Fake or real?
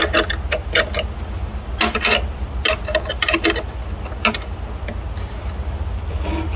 real